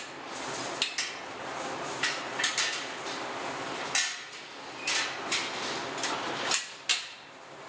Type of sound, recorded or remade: recorded